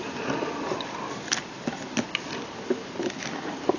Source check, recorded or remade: recorded